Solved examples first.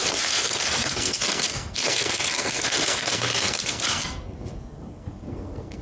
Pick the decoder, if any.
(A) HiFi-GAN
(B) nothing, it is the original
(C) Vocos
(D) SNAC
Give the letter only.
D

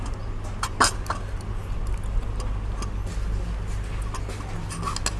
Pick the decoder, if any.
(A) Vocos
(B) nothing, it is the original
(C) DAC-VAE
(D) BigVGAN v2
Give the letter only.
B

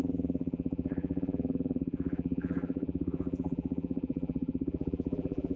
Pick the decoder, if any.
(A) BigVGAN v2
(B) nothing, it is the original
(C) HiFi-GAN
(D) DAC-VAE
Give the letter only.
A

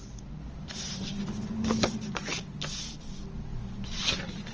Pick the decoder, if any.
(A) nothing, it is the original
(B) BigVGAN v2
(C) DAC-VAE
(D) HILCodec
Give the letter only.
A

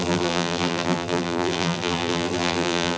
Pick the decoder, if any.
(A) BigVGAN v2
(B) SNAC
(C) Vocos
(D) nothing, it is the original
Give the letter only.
A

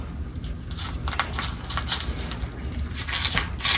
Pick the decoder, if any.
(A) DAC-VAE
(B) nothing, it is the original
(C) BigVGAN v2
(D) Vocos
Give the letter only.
B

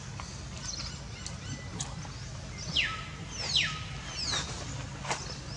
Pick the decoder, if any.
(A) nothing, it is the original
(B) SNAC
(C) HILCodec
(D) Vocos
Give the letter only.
A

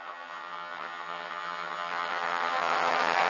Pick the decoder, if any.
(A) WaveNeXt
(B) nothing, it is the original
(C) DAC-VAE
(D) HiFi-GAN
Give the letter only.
D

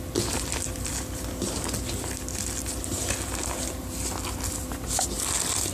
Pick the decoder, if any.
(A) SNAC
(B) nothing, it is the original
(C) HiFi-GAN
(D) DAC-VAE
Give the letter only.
B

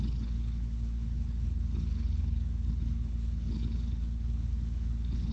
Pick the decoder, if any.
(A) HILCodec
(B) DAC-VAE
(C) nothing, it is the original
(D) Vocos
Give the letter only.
A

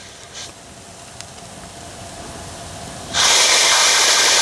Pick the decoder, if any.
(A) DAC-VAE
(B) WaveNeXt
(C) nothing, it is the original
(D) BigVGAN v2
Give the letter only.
C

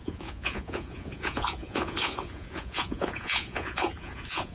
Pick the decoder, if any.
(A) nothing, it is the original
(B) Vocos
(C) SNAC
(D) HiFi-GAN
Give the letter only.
B